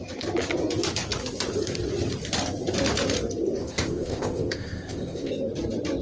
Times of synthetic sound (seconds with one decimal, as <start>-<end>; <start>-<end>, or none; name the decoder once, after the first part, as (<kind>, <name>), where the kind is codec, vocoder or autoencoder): 3.6-5.3 (codec, ZipCodec)